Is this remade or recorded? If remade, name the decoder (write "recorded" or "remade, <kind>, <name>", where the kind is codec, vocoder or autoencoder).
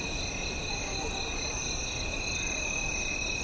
recorded